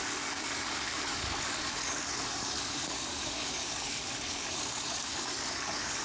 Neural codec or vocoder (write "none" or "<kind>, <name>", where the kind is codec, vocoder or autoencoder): codec, DAC